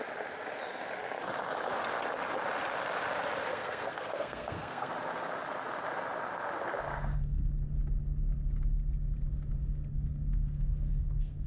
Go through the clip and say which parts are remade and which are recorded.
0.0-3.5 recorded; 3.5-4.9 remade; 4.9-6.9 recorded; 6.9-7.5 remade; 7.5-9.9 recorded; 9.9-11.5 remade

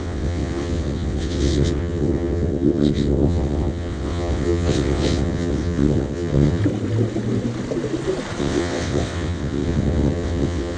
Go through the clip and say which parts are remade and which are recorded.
0.0-6.6 remade; 6.6-8.4 recorded; 8.4-10.8 remade

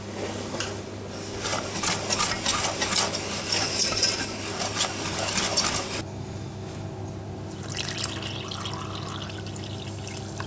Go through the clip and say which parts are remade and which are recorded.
0.0-10.5 recorded

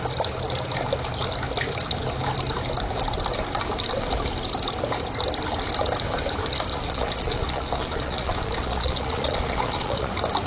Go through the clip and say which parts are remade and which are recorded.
0.0-6.7 recorded; 6.7-10.1 remade; 10.1-10.5 recorded

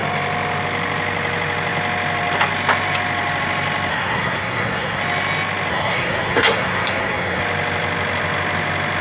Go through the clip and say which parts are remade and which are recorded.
0.0-3.9 recorded; 3.9-5.0 remade; 5.0-5.7 recorded; 5.7-7.4 remade; 7.4-9.0 recorded

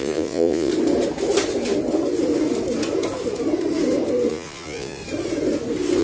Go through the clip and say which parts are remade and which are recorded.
0.0-0.7 remade; 0.7-4.3 recorded; 4.3-5.0 remade; 5.0-6.0 recorded